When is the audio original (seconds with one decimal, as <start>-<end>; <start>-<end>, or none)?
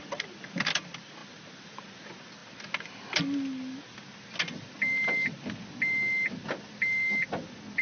0.0-7.8